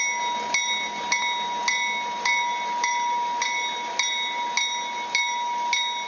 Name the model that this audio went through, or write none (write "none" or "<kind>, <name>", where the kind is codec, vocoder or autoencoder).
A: none